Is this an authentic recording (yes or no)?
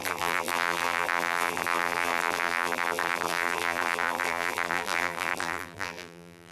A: no